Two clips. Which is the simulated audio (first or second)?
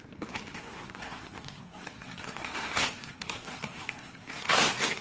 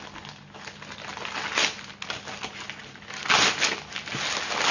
first